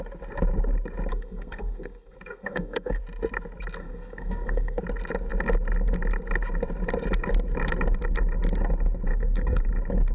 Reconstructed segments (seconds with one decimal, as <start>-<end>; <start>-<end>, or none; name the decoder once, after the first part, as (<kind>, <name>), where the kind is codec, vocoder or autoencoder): 1.1-3.0 (codec, SNAC); 3.8-4.8; 9.1-9.7

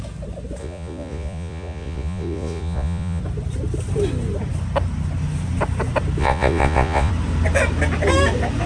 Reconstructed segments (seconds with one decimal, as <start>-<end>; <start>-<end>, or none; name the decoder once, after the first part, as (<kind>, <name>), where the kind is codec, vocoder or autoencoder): 0.6-3.2 (vocoder, Vocos); 6.2-7.1

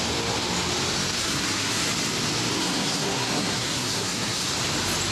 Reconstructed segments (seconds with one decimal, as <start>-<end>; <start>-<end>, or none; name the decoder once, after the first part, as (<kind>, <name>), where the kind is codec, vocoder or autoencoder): 1.2-1.8 (codec, SNAC); 2.6-4.5

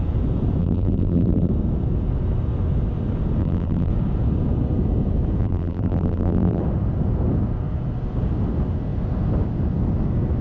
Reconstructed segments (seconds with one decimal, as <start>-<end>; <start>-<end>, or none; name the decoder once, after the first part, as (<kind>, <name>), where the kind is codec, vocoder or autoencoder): 0.6-1.5 (vocoder, BigVGAN v2); 3.4-3.9; 5.4-6.6

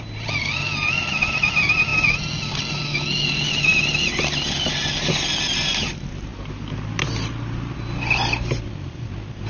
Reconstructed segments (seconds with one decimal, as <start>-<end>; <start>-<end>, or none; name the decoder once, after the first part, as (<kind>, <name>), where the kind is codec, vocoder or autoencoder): none

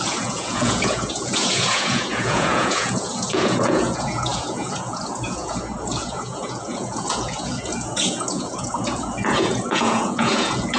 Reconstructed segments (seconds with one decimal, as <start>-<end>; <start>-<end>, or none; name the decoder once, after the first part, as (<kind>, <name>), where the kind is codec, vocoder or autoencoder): 0.0-10.8 (vocoder, Vocos)

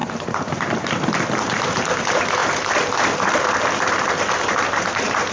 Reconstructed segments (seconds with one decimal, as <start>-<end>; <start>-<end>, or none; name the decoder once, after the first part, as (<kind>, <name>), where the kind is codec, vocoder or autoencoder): none

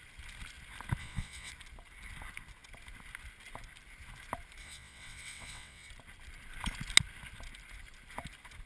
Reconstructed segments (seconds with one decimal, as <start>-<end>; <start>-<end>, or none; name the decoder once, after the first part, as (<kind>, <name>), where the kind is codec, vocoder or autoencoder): 1.0-1.5 (vocoder, WaveNeXt); 4.6-5.9